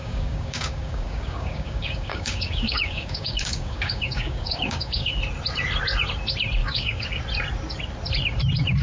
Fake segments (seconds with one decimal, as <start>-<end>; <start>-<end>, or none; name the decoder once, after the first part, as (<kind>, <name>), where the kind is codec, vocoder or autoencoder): 0.0-5.2 (codec, DAC); 6.6-7.2